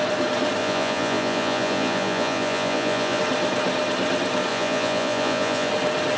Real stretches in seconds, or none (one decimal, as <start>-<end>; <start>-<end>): 0.0-0.6; 3.2-4.5; 5.7-6.2